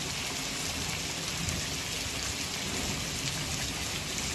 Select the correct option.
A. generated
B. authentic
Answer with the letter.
B